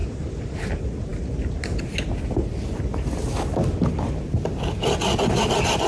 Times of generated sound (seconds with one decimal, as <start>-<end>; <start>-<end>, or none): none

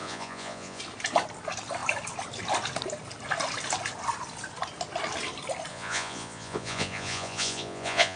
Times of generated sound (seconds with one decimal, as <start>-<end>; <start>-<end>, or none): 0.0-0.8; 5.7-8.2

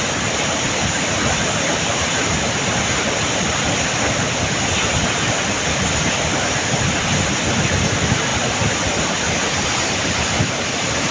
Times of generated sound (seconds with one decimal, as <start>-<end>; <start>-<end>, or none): 1.7-2.3

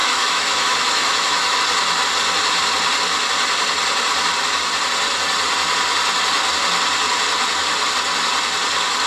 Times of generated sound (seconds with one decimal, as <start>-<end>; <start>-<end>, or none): 0.0-1.6

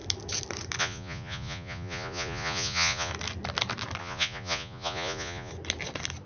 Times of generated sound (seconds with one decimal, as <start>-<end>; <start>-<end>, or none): 0.8-3.1; 4.0-5.5

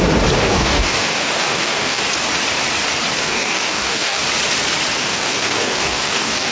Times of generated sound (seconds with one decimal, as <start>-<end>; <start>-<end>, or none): 0.4-2.0; 3.2-4.2; 5.0-6.5

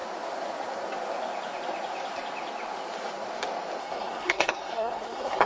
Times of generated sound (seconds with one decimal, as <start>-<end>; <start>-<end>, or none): 3.8-5.5

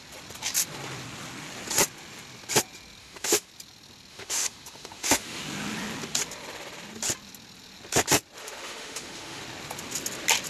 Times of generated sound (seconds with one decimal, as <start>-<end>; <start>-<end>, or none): 3.0-3.5; 4.1-5.4; 8.4-9.4